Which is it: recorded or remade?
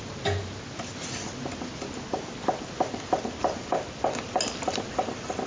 recorded